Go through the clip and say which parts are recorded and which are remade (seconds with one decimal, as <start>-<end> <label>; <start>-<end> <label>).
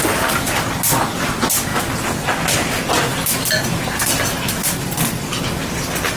0.0-6.2 recorded